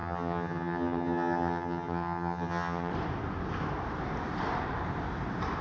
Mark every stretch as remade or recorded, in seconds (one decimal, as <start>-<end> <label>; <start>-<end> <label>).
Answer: 0.0-2.9 remade; 2.9-5.6 recorded